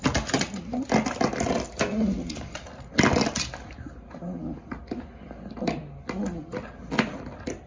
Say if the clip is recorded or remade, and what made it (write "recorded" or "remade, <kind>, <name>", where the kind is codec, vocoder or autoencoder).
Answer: recorded